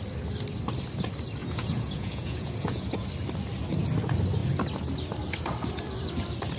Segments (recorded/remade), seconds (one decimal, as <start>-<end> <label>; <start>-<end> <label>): 0.0-1.4 recorded; 1.4-3.1 remade; 3.1-6.6 recorded